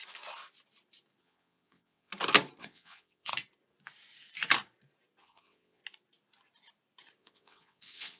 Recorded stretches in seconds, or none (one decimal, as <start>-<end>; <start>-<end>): 0.0-1.2; 2.1-2.6; 3.3-5.2; 5.8-7.2